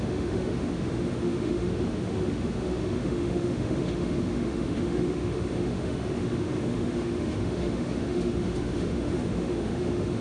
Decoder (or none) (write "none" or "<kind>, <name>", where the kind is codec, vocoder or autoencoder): autoencoder, DAC-VAE